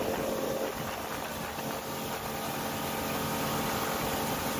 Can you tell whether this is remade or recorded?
recorded